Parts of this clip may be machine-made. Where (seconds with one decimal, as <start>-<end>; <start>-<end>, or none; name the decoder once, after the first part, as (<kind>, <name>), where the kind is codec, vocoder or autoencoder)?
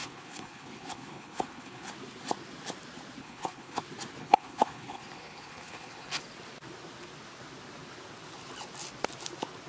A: 0.0-1.9 (codec, HILCodec); 3.2-3.8; 4.2-6.2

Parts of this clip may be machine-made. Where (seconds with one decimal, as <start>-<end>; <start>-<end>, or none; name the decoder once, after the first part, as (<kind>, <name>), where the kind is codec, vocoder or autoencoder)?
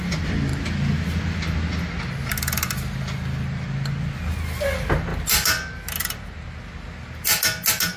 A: none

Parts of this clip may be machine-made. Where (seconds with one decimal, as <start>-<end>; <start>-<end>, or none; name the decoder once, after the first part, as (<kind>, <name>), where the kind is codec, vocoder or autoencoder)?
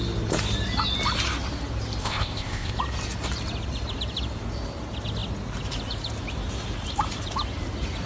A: 2.0-2.7 (codec, ZipCodec)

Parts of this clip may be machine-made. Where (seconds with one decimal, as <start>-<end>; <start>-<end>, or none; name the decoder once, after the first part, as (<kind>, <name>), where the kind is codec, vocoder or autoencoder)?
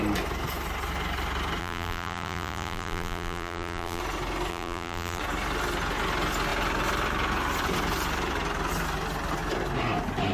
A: 1.6-4.0 (vocoder, BigVGAN v2); 4.5-5.2